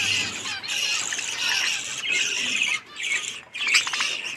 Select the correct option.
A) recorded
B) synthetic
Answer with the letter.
A